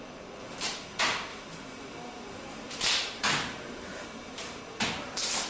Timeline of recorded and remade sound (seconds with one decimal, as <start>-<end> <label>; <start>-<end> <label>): 0.0-1.3 recorded; 1.3-4.6 remade; 4.6-5.5 recorded